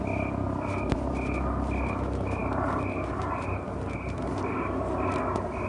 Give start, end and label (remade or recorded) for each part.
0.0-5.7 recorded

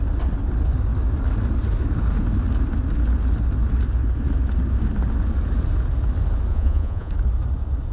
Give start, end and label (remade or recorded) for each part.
0.0-6.5 recorded; 6.5-7.1 remade; 7.1-7.9 recorded